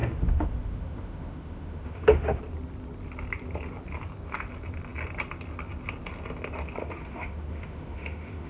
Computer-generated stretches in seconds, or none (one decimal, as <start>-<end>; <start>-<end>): 0.0-2.4; 6.8-8.5